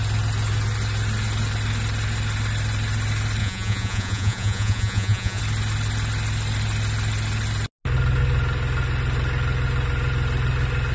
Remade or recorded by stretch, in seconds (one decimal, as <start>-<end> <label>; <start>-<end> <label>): 0.0-3.4 recorded; 3.4-5.4 remade; 5.4-10.9 recorded